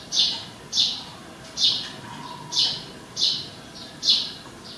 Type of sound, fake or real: real